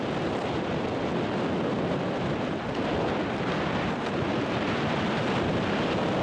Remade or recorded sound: recorded